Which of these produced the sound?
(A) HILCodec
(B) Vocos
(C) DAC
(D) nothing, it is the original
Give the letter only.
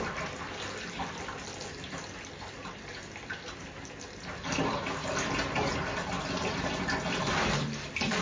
D